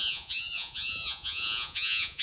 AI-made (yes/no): yes